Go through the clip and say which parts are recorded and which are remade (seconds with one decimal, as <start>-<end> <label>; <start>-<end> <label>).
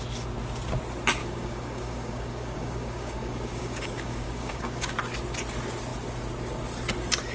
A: 0.0-1.2 recorded; 1.2-4.9 remade; 4.9-7.3 recorded